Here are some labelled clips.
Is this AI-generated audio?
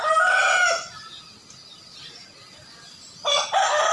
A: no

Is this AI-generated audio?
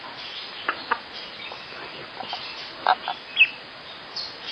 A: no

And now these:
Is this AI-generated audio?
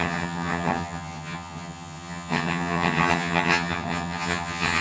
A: yes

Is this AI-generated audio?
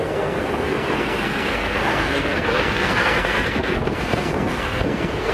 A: yes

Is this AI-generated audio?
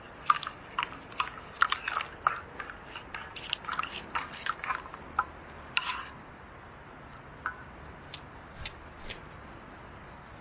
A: no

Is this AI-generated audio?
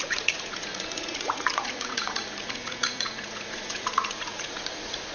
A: yes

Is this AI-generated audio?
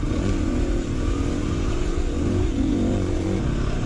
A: yes